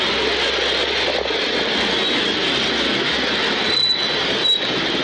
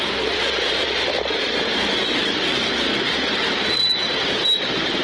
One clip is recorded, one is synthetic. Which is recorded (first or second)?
first